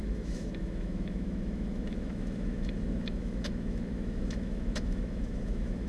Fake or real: fake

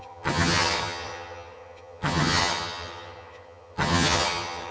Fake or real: fake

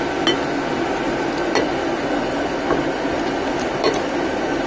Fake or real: real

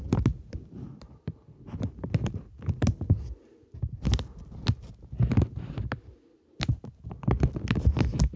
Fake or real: real